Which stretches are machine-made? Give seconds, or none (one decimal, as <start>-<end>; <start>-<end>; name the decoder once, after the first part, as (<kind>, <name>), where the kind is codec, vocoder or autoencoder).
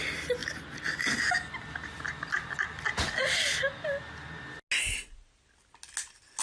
none